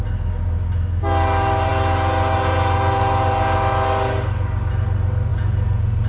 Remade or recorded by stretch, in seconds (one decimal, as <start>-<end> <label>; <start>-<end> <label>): 0.0-5.3 recorded; 5.3-6.1 remade